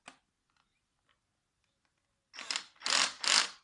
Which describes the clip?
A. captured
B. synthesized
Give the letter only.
A